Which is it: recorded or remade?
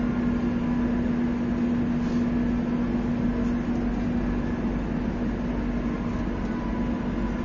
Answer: recorded